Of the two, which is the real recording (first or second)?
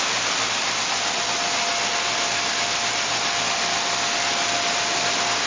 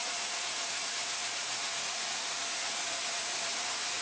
first